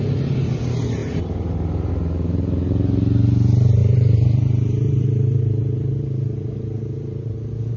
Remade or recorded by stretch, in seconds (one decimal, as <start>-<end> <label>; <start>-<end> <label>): 0.0-1.0 recorded; 1.0-1.9 remade; 1.9-3.8 recorded; 3.8-7.3 remade; 7.3-7.8 recorded